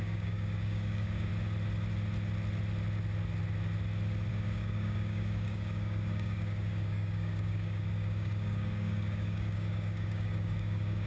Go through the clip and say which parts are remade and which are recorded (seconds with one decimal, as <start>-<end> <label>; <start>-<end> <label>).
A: 0.0-1.3 remade; 1.3-4.3 recorded; 4.3-11.1 remade